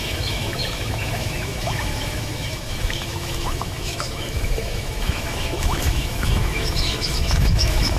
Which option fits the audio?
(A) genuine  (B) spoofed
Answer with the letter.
B